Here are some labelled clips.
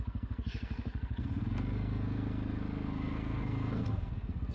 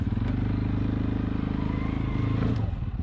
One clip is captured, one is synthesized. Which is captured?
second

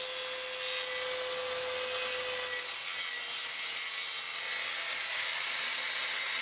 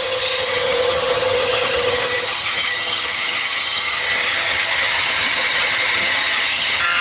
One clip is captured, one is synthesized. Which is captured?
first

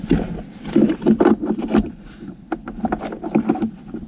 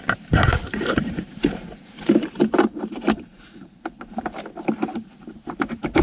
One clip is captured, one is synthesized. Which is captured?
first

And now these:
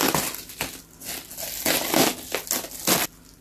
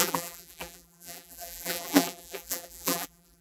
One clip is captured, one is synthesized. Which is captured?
first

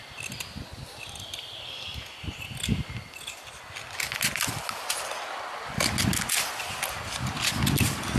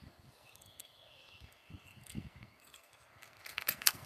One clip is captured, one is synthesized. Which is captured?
first